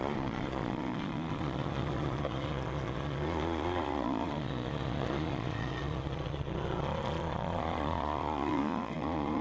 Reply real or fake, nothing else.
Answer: fake